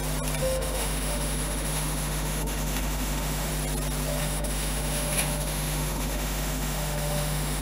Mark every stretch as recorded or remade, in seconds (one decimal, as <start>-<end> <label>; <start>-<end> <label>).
0.0-0.4 recorded; 0.4-3.5 remade; 3.5-4.2 recorded; 4.2-7.6 remade